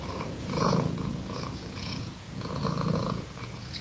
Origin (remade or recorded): remade